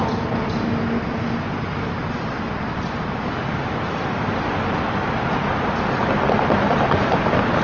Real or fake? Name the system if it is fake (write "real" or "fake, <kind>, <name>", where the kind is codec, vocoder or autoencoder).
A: real